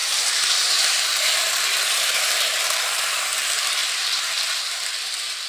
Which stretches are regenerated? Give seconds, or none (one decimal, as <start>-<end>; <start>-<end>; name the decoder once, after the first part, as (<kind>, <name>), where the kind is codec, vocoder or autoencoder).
0.0-3.3 (vocoder, BigVGAN v2); 3.8-4.6